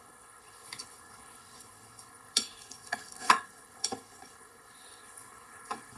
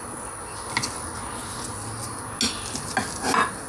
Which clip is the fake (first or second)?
first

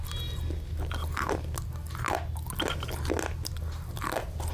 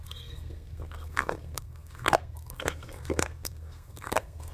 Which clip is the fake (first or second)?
second